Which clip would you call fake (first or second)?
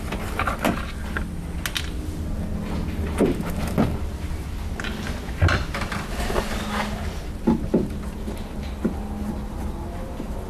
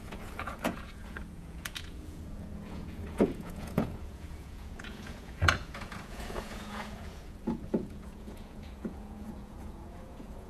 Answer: second